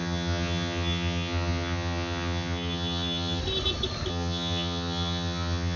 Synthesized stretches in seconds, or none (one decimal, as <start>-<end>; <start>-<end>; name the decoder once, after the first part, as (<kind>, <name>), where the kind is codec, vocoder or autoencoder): 0.0-3.4 (vocoder, HiFi-GAN); 4.1-5.8